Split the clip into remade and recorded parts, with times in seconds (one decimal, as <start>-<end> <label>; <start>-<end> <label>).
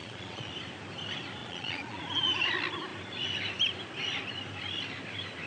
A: 0.0-0.5 remade; 0.5-1.4 recorded; 1.4-2.0 remade; 2.0-5.5 recorded